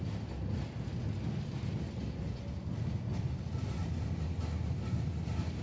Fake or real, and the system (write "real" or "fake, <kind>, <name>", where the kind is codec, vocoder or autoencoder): real